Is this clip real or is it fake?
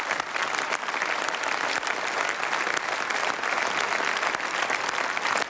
real